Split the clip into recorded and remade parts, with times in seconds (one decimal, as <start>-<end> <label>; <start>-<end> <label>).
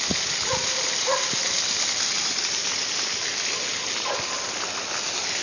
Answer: 0.0-5.4 recorded